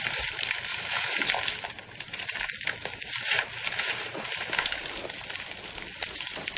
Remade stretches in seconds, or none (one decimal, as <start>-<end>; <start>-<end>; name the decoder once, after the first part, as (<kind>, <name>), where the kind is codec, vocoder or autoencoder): 0.7-1.3 (autoencoder, DAC-VAE)